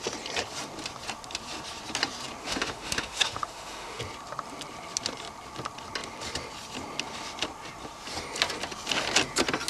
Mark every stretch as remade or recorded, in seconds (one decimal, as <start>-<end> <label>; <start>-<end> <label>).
0.0-2.4 recorded; 2.4-4.0 remade; 4.0-9.7 recorded